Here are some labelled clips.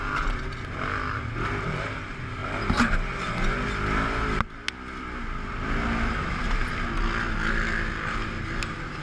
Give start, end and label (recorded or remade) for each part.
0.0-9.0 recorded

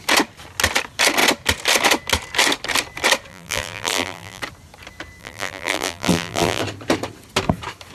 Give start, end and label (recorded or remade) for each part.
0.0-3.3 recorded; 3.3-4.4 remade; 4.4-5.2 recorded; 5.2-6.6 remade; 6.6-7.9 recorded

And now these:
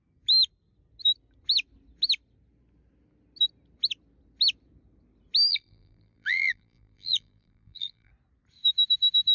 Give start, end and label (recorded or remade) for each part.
0.0-5.5 recorded; 5.5-8.1 remade; 8.1-9.3 recorded

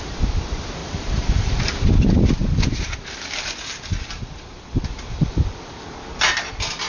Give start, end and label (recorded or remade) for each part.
0.0-0.8 recorded; 0.8-1.8 remade; 1.8-6.9 recorded

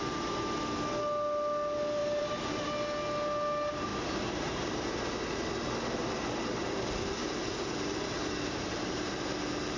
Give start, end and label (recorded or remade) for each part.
0.0-2.0 recorded; 2.0-2.6 remade; 2.6-3.9 recorded; 3.9-5.0 remade; 5.0-7.2 recorded; 7.2-9.1 remade; 9.1-9.8 recorded

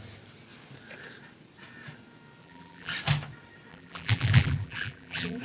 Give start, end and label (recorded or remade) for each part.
0.0-2.4 recorded; 2.4-2.9 remade; 2.9-3.7 recorded; 3.7-5.4 remade

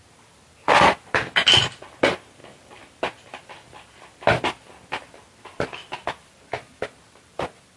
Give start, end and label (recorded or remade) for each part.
0.0-2.4 recorded; 2.4-5.2 remade; 5.2-5.8 recorded; 5.8-6.4 remade; 6.4-7.8 recorded

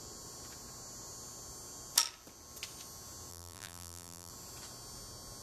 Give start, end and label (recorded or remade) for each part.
0.0-3.3 recorded; 3.3-4.3 remade; 4.3-5.4 recorded